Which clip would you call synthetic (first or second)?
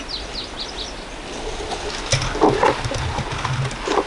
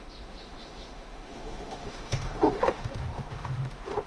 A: second